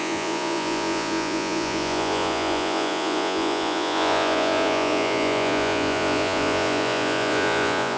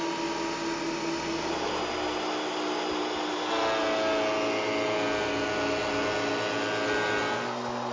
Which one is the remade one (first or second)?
first